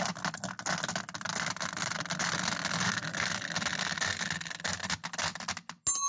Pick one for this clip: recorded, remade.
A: recorded